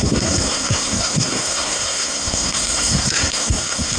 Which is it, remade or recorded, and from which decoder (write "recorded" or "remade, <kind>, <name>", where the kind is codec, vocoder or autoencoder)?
remade, codec, SNAC